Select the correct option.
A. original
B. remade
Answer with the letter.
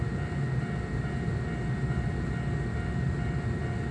A